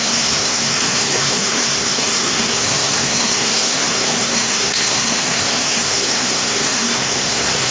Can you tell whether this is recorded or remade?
remade